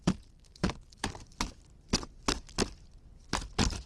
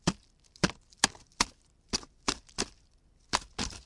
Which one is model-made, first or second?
first